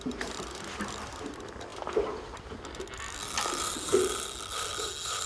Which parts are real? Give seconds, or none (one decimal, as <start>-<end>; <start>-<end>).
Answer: 0.0-5.3